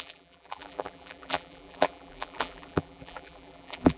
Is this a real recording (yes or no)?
no